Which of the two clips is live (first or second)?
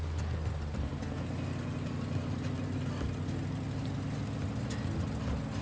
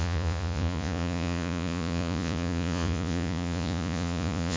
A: first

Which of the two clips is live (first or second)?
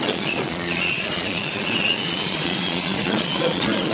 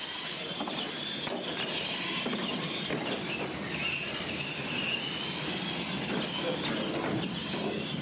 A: second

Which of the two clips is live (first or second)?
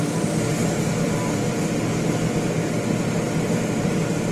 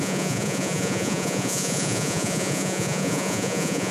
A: first